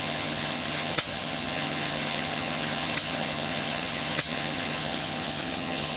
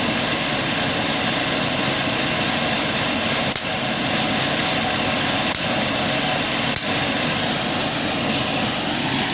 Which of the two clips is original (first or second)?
second